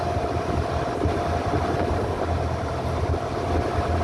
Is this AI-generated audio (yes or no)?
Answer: no